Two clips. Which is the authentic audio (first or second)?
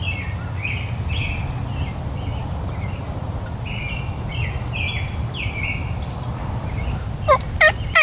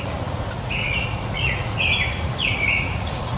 first